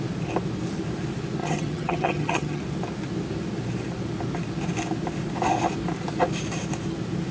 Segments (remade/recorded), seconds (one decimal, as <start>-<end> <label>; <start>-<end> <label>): 0.0-1.4 recorded; 1.4-2.6 remade; 2.6-7.3 recorded